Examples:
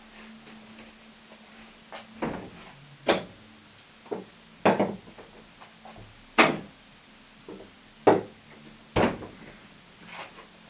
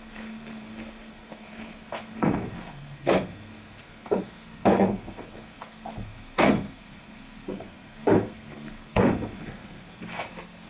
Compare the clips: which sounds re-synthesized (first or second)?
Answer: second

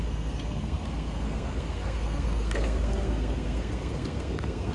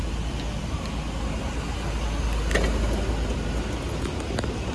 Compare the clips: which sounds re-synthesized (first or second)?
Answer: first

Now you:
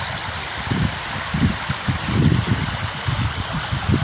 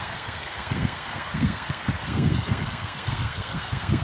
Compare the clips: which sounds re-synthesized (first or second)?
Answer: second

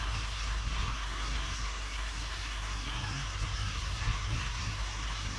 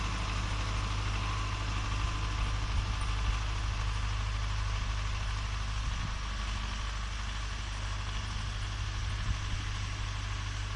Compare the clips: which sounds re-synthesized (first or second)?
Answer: first